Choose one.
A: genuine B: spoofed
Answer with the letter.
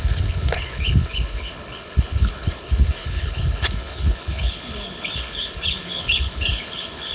B